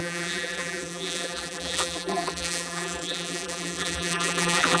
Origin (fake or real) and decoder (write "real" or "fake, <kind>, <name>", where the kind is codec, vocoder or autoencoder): fake, vocoder, BigVGAN v2